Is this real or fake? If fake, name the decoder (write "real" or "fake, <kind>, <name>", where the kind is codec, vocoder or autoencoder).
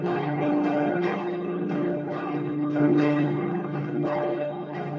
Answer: fake, codec, HILCodec